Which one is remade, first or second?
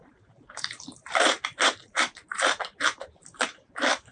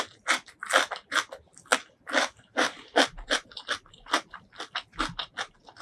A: first